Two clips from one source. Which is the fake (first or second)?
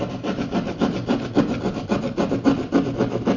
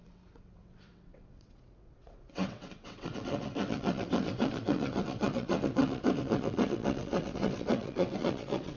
second